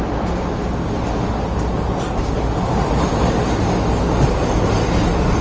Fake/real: real